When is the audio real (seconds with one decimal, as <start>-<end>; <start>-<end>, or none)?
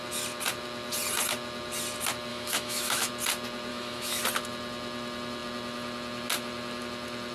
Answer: 0.0-2.3; 3.1-3.7; 4.2-7.3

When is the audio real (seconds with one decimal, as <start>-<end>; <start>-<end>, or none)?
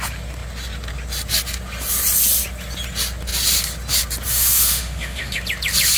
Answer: 0.0-4.3; 5.4-6.0